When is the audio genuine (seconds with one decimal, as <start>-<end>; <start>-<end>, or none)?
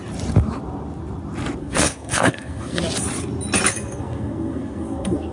0.0-1.6; 2.8-3.7